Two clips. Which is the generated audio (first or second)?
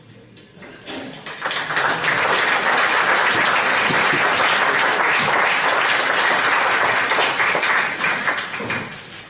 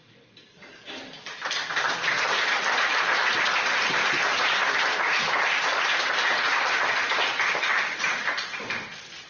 second